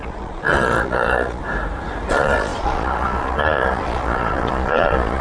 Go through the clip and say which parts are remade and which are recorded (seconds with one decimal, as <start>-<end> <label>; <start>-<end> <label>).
0.0-1.4 remade; 1.4-2.1 recorded; 2.1-5.2 remade